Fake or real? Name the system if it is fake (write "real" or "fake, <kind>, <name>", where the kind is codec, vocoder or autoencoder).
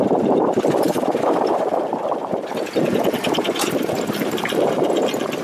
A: fake, vocoder, BigVGAN v2